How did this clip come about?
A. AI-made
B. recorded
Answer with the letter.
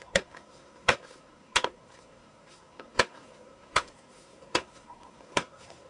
A